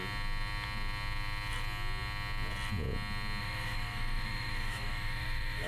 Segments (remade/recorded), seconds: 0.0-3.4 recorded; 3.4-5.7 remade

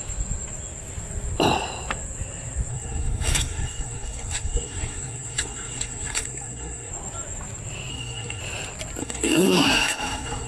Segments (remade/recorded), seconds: 0.0-2.7 recorded; 2.7-6.9 remade; 6.9-7.9 recorded; 7.9-8.4 remade; 8.4-9.0 recorded; 9.0-10.5 remade